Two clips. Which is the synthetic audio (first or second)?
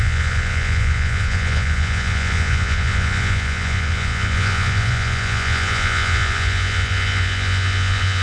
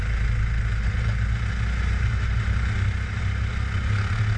first